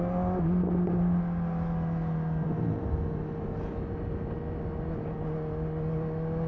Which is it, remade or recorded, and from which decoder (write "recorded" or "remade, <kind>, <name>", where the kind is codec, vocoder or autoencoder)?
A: recorded